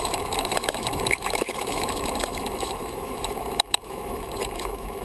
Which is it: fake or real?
fake